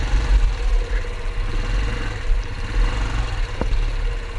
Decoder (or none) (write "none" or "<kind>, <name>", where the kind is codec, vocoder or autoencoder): vocoder, BigVGAN v2